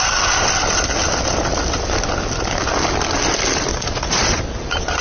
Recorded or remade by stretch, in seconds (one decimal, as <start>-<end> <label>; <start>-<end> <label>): 0.0-3.7 recorded; 3.7-4.4 remade; 4.4-5.0 recorded